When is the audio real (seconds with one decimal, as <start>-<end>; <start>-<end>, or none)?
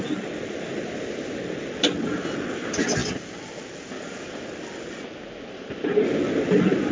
0.0-6.9